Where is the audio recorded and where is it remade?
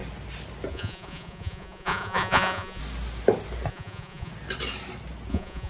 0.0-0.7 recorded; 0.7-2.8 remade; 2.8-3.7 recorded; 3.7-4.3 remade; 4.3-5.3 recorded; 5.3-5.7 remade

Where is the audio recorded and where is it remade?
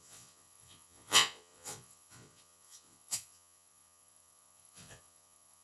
0.0-5.6 remade